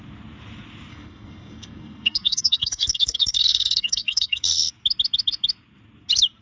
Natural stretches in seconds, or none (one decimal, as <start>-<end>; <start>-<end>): 0.0-0.9; 4.7-6.4

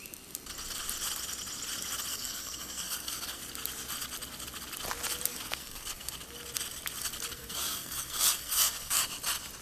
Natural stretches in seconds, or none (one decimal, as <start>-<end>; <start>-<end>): 0.0-2.1; 3.4-5.3; 6.1-7.3; 9.0-9.6